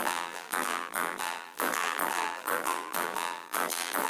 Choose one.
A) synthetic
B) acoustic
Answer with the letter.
A